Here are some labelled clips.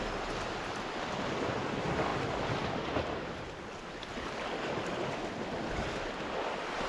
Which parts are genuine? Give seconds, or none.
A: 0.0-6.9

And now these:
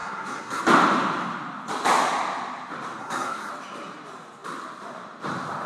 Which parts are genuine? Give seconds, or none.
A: 0.6-3.0; 3.5-5.7

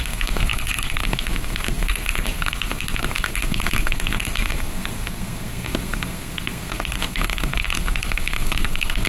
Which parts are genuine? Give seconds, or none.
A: none

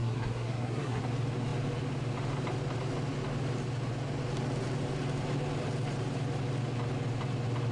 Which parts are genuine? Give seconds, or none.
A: 1.0-7.7